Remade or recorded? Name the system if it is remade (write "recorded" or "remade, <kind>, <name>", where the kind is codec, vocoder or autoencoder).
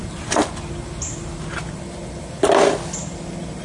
recorded